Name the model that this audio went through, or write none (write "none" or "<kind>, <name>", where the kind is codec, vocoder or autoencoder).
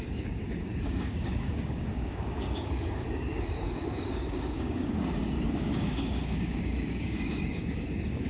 codec, DAC